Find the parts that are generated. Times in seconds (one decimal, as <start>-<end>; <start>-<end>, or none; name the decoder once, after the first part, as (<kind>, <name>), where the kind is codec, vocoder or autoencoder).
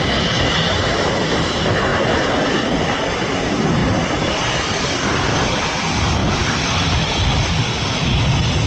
6.2-7.3 (vocoder, BigVGAN v2)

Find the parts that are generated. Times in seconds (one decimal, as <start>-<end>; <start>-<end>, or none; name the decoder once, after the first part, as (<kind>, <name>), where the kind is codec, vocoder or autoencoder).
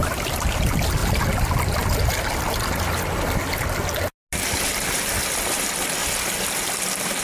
0.0-0.6 (vocoder, BigVGAN v2)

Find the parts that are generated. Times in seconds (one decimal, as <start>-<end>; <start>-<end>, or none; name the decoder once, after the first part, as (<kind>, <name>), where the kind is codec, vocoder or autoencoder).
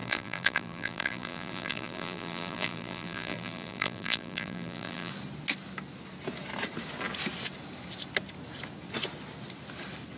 0.0-5.1 (vocoder, BigVGAN v2)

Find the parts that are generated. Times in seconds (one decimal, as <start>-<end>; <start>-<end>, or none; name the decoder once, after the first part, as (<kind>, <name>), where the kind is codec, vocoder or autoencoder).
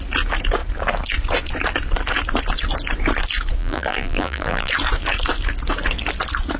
3.6-4.7 (vocoder, BigVGAN v2)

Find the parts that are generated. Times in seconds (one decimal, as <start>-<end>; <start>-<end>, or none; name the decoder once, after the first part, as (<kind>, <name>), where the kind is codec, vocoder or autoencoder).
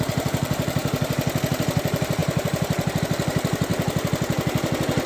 0.0-0.8 (vocoder, BigVGAN v2); 1.5-3.7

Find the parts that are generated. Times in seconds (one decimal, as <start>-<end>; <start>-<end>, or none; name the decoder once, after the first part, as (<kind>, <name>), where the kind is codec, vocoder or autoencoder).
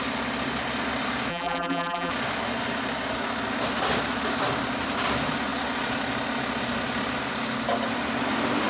1.3-2.1 (vocoder, BigVGAN v2)